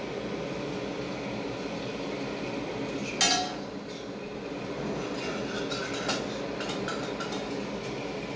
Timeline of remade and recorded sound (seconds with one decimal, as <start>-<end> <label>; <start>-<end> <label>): 0.0-8.4 recorded